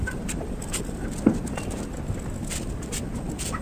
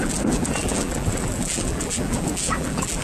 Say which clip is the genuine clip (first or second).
first